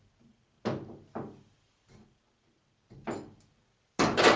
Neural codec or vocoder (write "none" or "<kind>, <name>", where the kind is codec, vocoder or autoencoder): none